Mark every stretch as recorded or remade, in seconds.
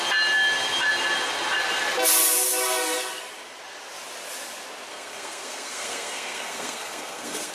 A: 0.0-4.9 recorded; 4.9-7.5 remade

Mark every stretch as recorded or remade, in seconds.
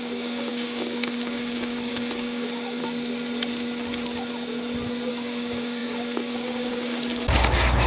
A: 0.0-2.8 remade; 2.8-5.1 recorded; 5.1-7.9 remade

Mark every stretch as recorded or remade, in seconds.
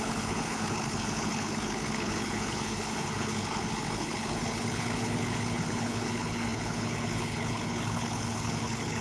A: 0.0-9.0 remade